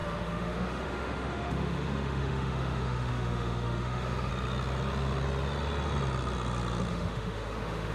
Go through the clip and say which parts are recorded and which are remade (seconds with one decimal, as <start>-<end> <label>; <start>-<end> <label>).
0.0-4.3 remade; 4.3-6.9 recorded; 6.9-7.9 remade